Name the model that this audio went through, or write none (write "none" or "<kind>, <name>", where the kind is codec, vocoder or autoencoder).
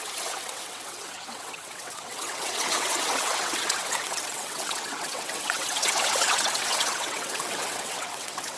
vocoder, WaveNeXt